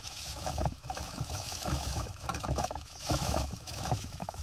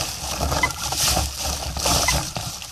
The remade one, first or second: first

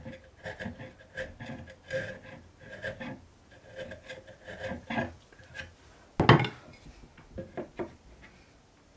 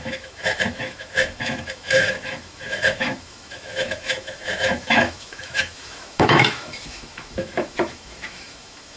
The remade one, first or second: second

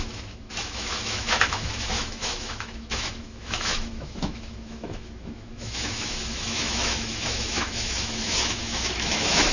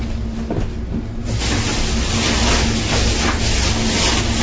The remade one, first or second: first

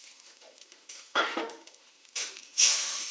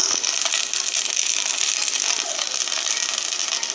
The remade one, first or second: first